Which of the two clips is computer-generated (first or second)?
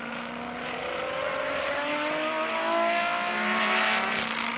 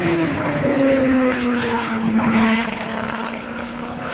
second